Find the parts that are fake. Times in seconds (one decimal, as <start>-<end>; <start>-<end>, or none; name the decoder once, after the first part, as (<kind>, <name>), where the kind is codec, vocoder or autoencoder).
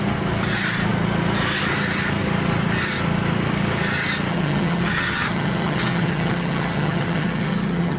4.3-8.0 (vocoder, HiFi-GAN)